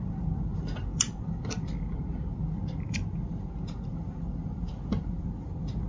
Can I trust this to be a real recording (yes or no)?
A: no